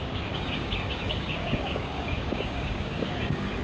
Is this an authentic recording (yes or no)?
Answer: no